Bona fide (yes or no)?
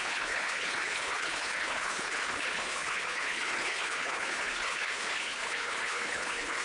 no